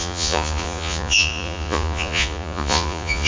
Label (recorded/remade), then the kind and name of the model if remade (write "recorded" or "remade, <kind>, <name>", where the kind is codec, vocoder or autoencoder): remade, vocoder, Vocos